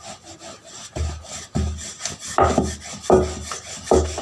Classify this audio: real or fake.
real